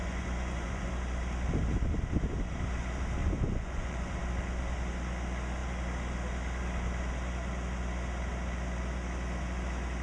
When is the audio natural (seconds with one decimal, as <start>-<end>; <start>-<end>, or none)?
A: 0.9-3.2; 4.2-10.0